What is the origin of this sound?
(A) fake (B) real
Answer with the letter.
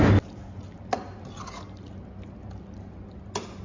B